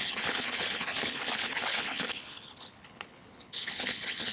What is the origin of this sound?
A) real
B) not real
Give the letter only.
B